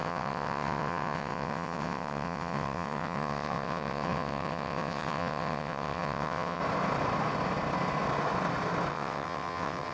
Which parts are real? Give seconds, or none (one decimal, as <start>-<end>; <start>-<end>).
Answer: 6.6-8.9